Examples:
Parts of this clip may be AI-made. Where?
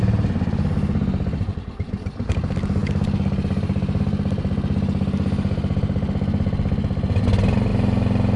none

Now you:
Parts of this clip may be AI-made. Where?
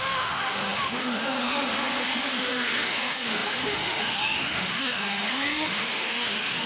0.0-6.7 (autoencoder, DAC-VAE)